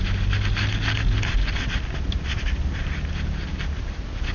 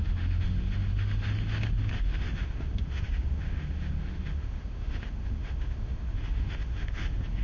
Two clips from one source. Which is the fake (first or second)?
second